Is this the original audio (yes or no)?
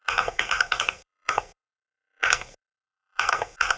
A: no